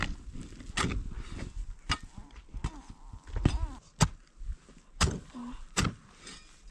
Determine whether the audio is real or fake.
real